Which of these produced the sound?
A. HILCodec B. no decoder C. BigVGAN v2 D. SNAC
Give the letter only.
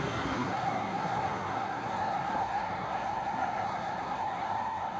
D